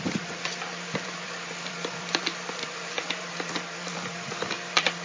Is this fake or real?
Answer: fake